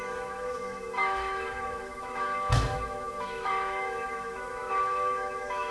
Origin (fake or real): fake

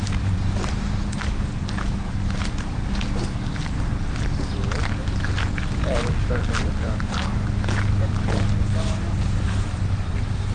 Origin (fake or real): real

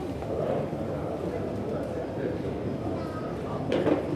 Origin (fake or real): fake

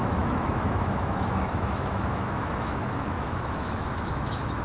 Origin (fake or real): fake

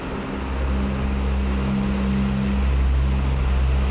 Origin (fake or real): real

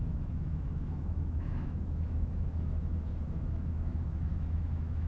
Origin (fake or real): fake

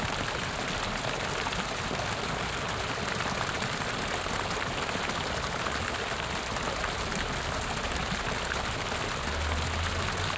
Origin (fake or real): real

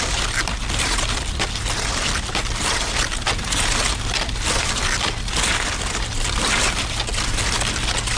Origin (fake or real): real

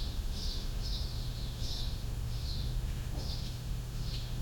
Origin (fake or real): fake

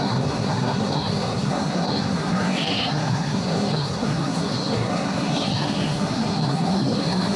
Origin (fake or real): fake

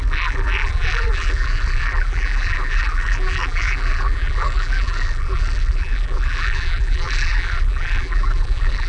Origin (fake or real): fake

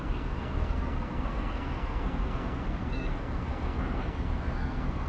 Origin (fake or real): fake